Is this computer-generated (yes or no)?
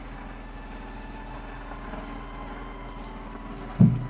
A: no